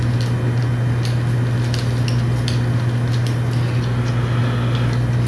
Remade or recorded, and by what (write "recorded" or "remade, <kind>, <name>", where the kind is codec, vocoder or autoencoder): recorded